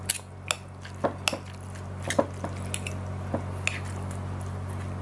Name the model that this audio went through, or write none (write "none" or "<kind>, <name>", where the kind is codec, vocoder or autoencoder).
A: none